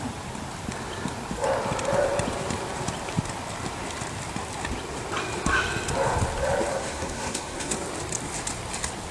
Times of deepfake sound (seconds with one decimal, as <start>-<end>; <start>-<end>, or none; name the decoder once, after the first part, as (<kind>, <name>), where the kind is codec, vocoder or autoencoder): 6.7-7.7 (codec, SNAC)